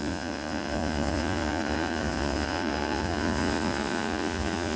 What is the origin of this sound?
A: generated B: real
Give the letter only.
A